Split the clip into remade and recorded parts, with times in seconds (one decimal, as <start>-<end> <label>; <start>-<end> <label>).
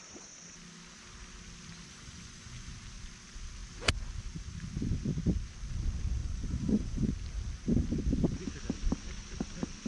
0.0-1.8 recorded; 1.8-2.7 remade; 2.7-6.2 recorded; 6.2-7.1 remade; 7.1-9.9 recorded